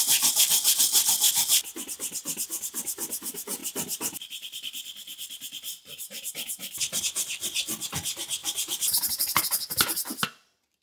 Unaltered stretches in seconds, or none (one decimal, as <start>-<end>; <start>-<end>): 0.0-2.2; 2.8-3.6; 7.0-8.4; 9.4-10.8